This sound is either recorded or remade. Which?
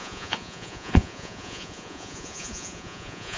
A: remade